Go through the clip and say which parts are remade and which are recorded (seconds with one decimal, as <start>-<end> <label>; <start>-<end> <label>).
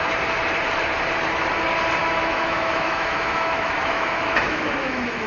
0.0-2.0 recorded; 2.0-5.3 remade